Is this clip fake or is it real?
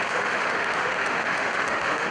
fake